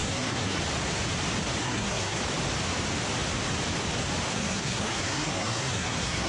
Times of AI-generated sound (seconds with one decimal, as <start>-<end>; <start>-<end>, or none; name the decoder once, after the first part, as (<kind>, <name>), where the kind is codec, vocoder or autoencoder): 0.0-0.6 (codec, SNAC); 1.6-2.2; 4.3-6.3

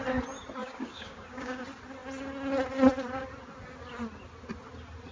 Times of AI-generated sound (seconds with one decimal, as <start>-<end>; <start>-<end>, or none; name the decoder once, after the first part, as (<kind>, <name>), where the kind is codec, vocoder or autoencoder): 0.6-1.6 (codec, DAC)

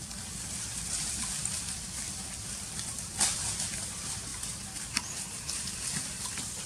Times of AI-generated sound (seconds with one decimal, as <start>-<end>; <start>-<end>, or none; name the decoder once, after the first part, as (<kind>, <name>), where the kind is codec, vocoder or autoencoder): none

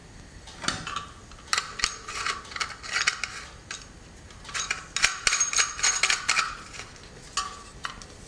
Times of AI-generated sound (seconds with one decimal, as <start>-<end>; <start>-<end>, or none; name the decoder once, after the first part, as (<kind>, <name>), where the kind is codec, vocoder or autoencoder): none

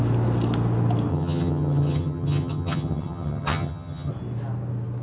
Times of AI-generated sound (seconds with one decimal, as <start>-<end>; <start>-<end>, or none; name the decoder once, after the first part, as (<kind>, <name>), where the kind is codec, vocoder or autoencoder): 1.1-4.1 (vocoder, HiFi-GAN)

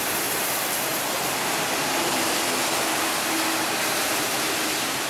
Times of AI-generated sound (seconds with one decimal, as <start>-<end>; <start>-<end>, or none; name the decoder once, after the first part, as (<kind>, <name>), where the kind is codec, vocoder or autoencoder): none

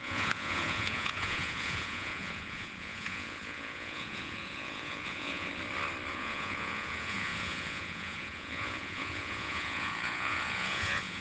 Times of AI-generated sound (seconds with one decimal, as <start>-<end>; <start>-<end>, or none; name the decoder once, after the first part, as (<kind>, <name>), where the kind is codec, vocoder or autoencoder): 0.0-5.5 (vocoder, Vocos); 6.1-11.2